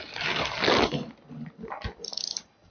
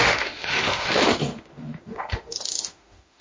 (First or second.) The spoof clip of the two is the second